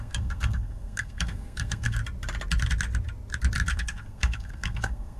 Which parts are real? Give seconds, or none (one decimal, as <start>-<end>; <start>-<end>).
2.0-3.7